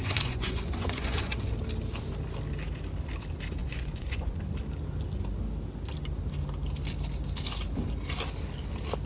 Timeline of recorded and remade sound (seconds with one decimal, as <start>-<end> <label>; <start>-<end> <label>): 0.0-1.5 remade; 1.5-3.6 recorded; 3.6-4.4 remade; 4.4-9.1 recorded